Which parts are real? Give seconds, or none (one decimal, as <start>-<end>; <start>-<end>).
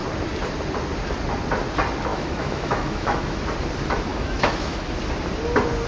0.0-2.1; 3.4-4.1; 4.8-5.9